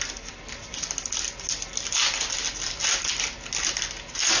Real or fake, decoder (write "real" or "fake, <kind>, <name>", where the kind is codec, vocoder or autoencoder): real